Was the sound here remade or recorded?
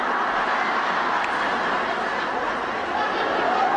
recorded